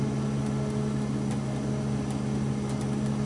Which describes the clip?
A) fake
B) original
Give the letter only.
B